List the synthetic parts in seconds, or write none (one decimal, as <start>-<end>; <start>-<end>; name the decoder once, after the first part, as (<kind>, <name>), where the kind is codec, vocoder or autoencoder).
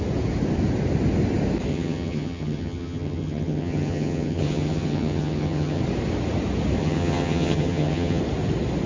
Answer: 1.7-5.8 (vocoder, HiFi-GAN); 6.8-8.2